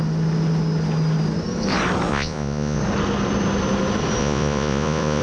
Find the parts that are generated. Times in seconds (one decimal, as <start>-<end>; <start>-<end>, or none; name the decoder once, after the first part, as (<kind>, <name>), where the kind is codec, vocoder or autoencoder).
2.1-2.8 (vocoder, Vocos); 4.2-5.2